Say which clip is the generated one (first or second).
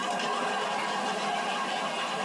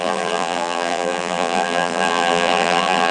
second